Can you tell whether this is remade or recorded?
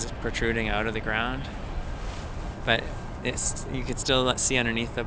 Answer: recorded